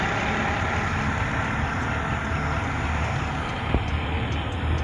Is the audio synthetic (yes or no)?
no